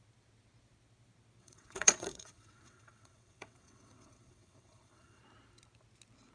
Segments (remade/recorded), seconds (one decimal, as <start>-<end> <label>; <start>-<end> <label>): 0.0-1.4 recorded; 1.4-5.2 remade; 5.2-6.3 recorded